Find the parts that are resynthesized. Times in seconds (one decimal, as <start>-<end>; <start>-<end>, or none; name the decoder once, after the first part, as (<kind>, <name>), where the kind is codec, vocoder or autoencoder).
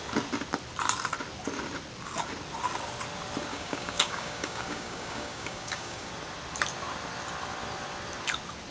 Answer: 3.5-6.1 (codec, DAC)